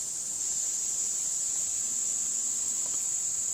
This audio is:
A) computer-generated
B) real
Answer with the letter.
B